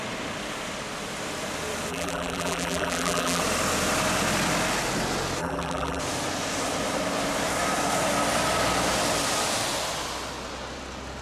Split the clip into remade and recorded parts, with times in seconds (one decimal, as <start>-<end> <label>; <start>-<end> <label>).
0.0-1.9 recorded; 1.9-3.4 remade; 3.4-5.4 recorded; 5.4-6.0 remade; 6.0-11.2 recorded